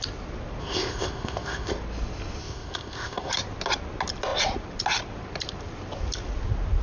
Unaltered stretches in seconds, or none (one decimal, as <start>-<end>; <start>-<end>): 0.0-0.6; 1.7-2.4; 3.3-6.8